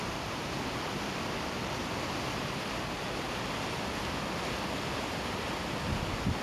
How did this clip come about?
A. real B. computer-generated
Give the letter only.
A